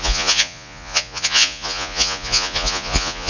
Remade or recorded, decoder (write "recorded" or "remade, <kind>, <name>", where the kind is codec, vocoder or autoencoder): remade, vocoder, Vocos